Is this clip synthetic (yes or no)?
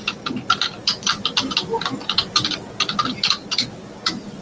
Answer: no